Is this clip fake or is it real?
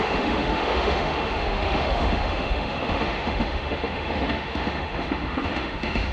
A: fake